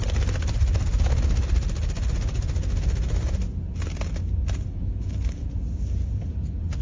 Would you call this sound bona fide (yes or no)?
yes